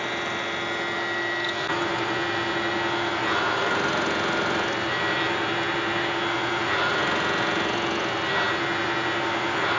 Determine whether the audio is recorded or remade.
recorded